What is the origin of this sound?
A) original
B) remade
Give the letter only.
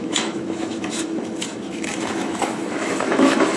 B